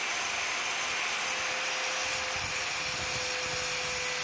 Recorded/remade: recorded